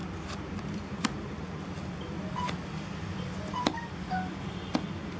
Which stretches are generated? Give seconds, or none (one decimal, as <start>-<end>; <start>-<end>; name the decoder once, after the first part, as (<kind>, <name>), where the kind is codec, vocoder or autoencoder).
none